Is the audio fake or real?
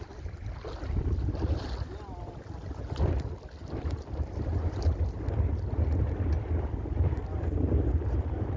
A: real